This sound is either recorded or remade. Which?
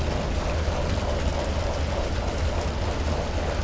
recorded